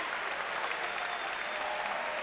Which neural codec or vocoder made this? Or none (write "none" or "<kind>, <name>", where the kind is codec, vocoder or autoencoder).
none